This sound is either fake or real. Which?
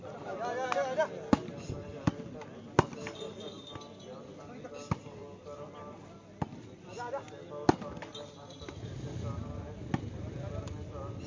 real